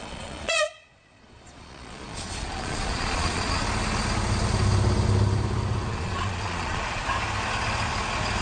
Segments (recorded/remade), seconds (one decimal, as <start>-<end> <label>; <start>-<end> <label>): 0.0-3.6 remade; 3.6-5.9 recorded; 5.9-7.0 remade; 7.0-8.4 recorded